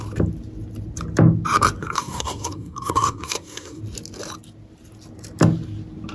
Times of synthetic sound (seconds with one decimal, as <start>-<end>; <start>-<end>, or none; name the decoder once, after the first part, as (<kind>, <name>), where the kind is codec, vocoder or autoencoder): 1.8-3.8 (codec, SNAC)